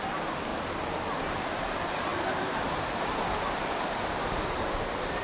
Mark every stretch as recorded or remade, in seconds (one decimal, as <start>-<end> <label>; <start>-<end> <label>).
0.0-0.5 remade; 0.5-1.2 recorded; 1.2-2.1 remade; 2.1-3.2 recorded; 3.2-5.2 remade